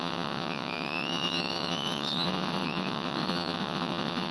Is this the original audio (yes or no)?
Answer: no